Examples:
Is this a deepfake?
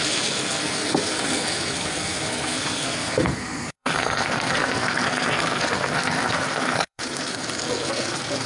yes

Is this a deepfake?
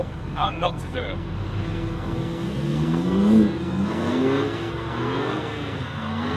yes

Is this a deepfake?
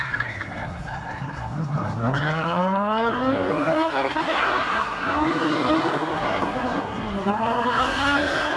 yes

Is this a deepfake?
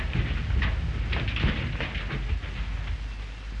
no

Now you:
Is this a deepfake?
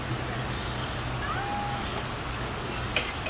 no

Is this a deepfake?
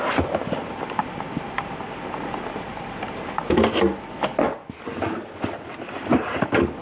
no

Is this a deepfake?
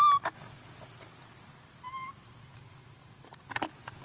no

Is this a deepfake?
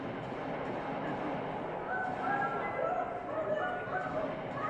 no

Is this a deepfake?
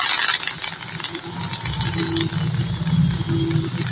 no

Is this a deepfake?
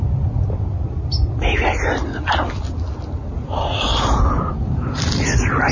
no